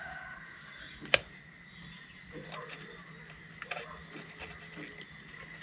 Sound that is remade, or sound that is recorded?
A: recorded